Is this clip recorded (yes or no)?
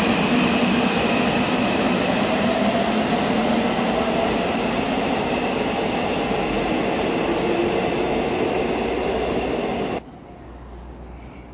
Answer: yes